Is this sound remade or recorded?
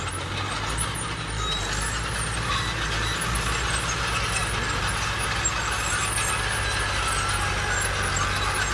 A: recorded